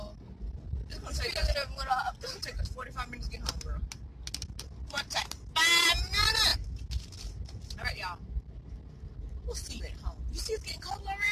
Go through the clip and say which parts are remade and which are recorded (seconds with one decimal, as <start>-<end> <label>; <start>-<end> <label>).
0.0-11.3 recorded